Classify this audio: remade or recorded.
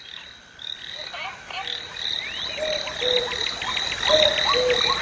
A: recorded